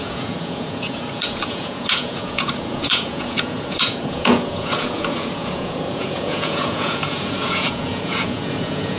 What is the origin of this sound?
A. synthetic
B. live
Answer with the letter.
A